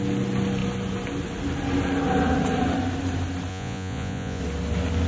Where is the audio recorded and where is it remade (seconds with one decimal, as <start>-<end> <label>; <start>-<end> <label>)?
0.0-3.5 recorded; 3.5-4.4 remade; 4.4-5.1 recorded